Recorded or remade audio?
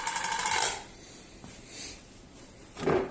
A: recorded